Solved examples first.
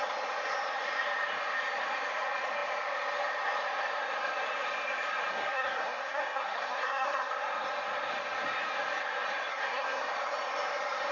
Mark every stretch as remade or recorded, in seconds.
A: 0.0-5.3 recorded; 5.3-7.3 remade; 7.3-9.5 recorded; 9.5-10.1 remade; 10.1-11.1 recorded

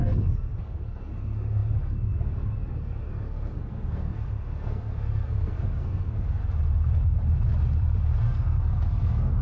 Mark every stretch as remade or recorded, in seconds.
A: 0.0-6.4 remade; 6.4-8.2 recorded; 8.2-9.4 remade